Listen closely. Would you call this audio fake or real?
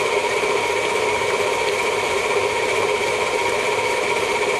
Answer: fake